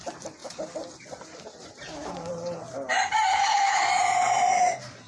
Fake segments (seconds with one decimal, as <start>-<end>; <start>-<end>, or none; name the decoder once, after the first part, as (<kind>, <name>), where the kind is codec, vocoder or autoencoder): 3.3-3.8 (codec, HILCodec)